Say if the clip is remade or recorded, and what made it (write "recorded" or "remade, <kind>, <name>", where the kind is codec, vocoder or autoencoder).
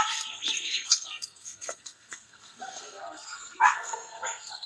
remade, codec, SNAC